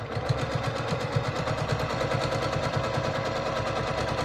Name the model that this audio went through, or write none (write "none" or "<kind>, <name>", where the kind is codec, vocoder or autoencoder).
vocoder, BigVGAN v2